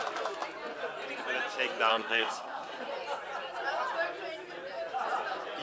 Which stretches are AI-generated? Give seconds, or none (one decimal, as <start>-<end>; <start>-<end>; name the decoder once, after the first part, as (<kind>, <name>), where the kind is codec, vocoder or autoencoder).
1.9-2.8 (codec, SNAC)